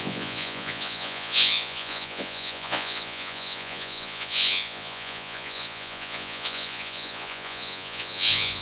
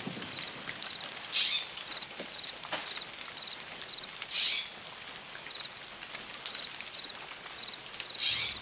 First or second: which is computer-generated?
first